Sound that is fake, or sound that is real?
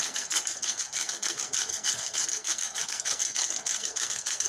fake